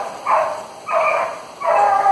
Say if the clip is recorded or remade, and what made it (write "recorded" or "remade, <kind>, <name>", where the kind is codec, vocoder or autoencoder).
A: recorded